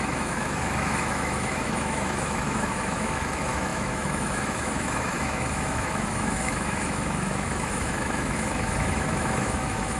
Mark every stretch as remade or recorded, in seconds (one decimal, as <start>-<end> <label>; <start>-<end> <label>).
0.0-10.0 remade